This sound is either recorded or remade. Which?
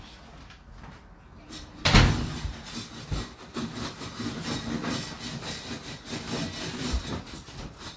recorded